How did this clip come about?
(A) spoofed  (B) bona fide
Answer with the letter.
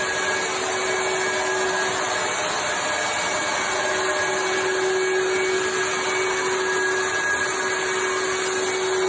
B